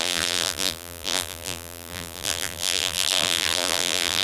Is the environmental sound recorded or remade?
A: remade